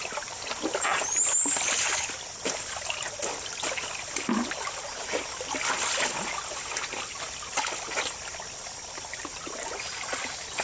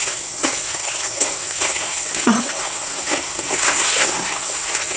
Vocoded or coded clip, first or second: second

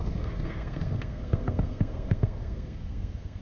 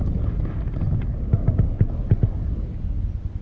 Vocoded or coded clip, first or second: first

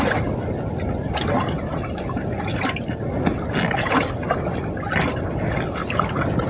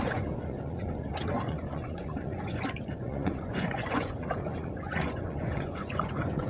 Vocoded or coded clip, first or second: second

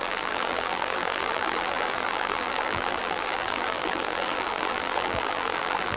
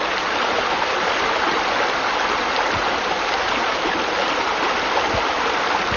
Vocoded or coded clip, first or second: first